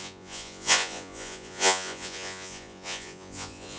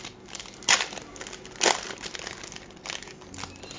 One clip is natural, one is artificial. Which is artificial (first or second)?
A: first